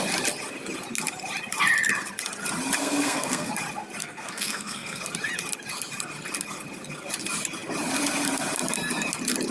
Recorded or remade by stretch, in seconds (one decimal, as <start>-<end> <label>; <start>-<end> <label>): 0.0-2.8 recorded; 2.8-3.5 remade; 3.5-4.0 recorded; 4.0-5.0 remade; 5.0-9.5 recorded